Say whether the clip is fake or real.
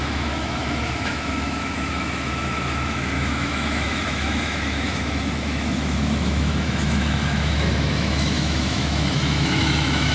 fake